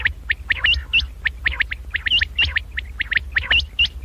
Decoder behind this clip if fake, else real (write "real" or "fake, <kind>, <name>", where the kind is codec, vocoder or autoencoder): real